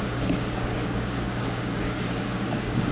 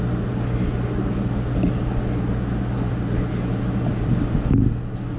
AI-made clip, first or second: first